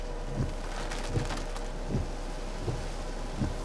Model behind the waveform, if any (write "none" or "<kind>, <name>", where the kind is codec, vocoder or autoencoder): none